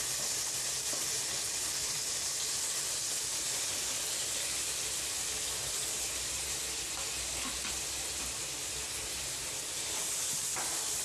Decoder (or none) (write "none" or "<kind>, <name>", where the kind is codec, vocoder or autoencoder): vocoder, BigVGAN v2